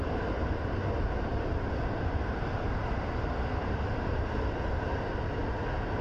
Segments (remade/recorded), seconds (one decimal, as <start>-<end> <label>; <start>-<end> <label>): 0.0-6.0 recorded